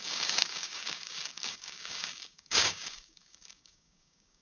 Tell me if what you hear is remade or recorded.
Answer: remade